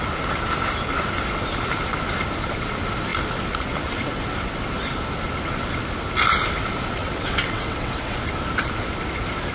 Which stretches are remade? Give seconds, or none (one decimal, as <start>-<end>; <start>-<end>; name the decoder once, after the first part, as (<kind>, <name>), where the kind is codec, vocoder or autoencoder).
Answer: 7.0-8.2 (vocoder, WaveNeXt)